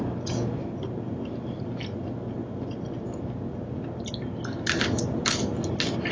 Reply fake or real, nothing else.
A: real